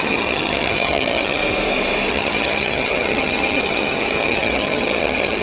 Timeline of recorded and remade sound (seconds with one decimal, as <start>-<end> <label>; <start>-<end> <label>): 0.0-1.4 remade; 1.4-2.1 recorded; 2.1-5.4 remade

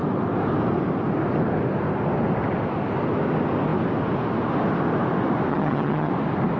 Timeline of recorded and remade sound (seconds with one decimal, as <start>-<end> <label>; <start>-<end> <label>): 0.0-5.5 recorded; 5.5-6.1 remade; 6.1-6.6 recorded

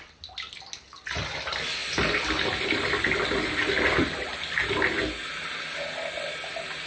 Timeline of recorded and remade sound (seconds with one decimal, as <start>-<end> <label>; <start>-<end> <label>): 0.0-6.9 recorded

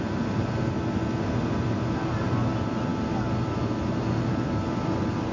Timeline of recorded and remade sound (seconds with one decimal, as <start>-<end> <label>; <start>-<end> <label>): 0.0-5.3 recorded

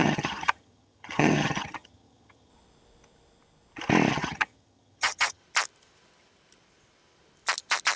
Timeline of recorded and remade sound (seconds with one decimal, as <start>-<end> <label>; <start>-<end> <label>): 0.0-2.5 remade; 2.5-4.1 recorded; 4.1-5.4 remade; 5.4-8.0 recorded

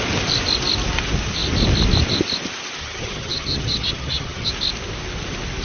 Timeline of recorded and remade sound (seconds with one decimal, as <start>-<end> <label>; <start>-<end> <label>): 0.0-2.8 recorded; 2.8-4.5 remade; 4.5-5.6 recorded